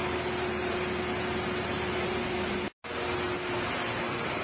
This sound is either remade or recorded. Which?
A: recorded